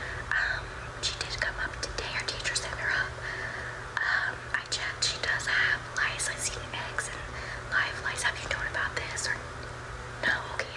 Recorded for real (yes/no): yes